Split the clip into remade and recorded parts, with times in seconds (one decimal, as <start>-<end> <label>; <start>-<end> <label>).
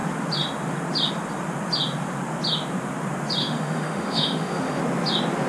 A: 0.0-3.4 recorded; 3.4-4.8 remade; 4.8-5.5 recorded